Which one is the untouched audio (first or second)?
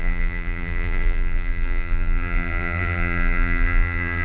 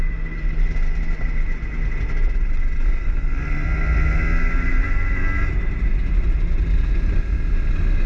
second